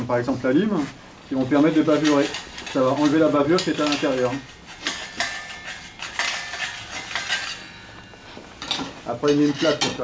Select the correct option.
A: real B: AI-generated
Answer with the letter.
A